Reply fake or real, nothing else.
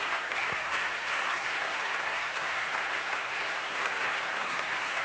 fake